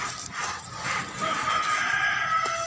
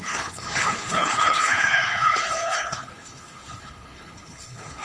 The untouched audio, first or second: first